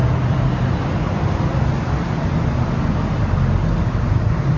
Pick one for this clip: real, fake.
real